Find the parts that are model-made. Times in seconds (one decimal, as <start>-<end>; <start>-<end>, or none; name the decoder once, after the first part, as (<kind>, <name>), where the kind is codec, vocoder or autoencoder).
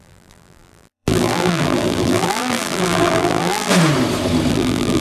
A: 0.0-3.7 (vocoder, BigVGAN v2); 4.5-5.0